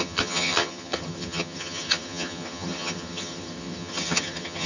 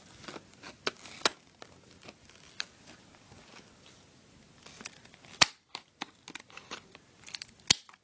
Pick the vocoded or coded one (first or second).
first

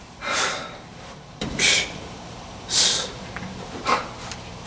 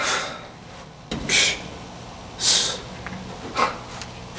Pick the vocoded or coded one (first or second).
first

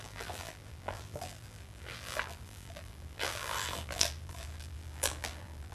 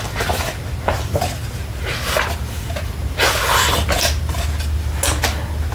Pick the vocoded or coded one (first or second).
first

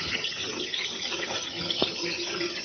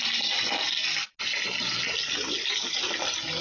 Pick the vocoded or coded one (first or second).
first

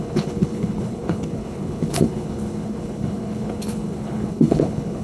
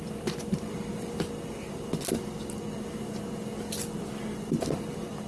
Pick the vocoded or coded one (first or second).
first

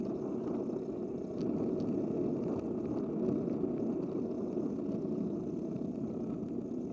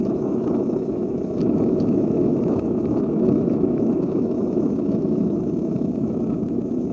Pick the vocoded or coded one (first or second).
second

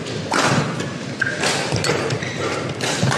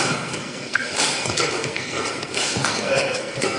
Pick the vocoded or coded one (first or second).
second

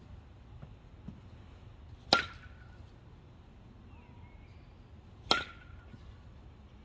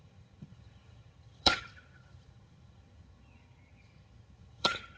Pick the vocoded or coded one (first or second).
second